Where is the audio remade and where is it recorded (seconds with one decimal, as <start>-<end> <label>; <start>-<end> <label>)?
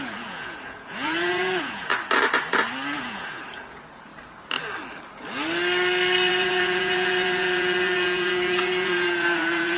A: 0.0-1.9 remade; 1.9-3.0 recorded; 3.0-4.1 remade; 4.1-6.3 recorded; 6.3-9.8 remade